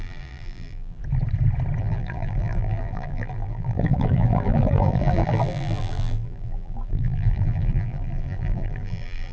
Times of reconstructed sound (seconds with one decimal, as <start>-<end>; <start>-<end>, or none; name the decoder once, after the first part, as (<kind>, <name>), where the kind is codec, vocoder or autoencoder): 0.0-1.0 (vocoder, BigVGAN v2); 1.8-9.3